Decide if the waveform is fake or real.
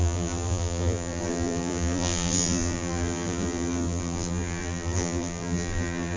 fake